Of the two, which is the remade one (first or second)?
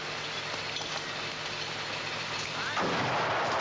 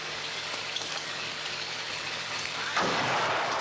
second